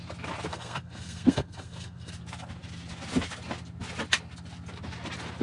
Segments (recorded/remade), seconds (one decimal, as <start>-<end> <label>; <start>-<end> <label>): 0.0-0.5 recorded; 0.5-2.1 remade; 2.1-5.4 recorded